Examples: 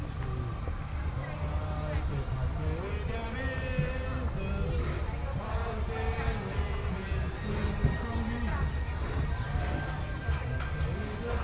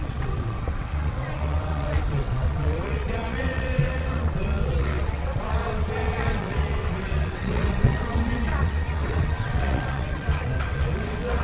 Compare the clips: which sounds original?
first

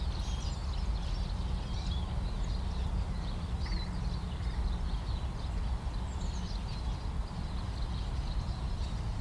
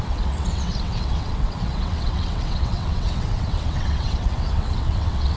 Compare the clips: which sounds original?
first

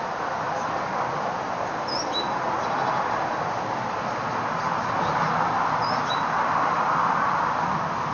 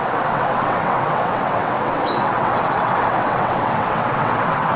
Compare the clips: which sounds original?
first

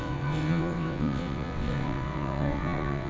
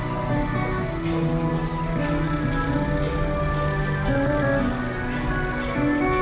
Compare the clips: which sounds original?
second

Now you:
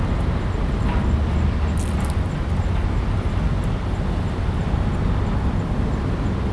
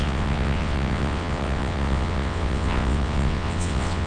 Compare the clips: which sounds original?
first